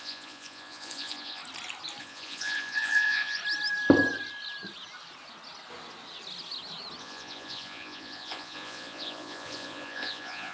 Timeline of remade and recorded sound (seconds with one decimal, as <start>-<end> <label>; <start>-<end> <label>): 0.0-1.4 remade; 1.4-2.0 recorded; 2.0-3.4 remade; 3.4-7.0 recorded; 7.0-10.5 remade